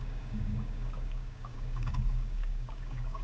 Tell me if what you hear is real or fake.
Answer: fake